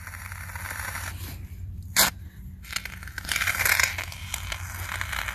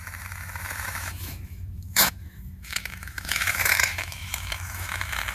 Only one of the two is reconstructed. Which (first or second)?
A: second